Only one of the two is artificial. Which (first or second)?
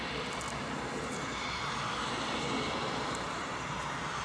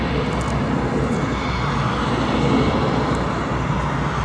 first